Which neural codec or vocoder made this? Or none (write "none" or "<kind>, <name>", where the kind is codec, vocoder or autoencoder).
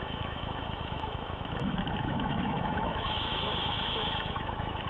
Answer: autoencoder, DAC-VAE